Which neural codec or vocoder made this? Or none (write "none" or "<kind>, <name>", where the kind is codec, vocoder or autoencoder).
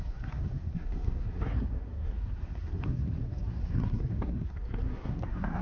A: codec, SNAC